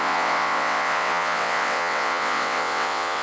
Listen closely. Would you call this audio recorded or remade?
remade